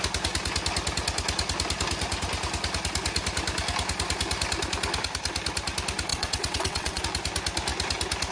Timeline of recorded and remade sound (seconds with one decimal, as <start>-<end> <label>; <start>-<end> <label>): 0.0-6.1 recorded; 6.1-7.0 remade; 7.0-8.3 recorded